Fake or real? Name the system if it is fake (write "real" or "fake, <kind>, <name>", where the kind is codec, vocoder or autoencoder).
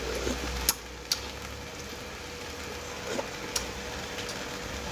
real